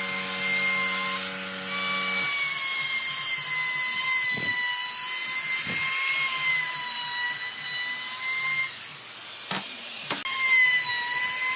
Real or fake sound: real